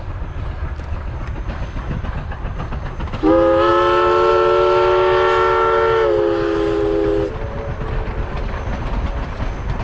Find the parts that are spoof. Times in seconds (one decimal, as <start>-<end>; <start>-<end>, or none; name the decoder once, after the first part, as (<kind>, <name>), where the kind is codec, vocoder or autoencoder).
none